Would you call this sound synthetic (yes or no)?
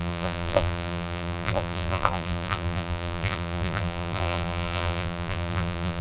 yes